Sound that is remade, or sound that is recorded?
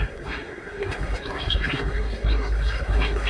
remade